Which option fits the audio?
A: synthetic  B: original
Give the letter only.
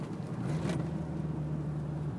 B